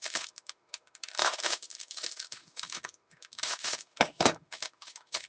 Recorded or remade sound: remade